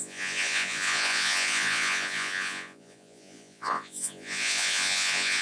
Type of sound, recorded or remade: remade